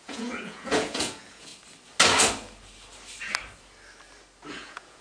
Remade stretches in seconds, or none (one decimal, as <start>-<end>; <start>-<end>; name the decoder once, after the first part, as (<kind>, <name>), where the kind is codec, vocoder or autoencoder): 0.0-1.5 (vocoder, Vocos); 4.5-5.0